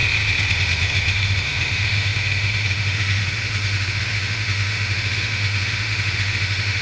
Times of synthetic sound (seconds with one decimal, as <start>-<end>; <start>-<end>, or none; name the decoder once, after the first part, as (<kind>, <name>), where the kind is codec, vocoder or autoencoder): 0.5-6.8 (autoencoder, DAC-VAE)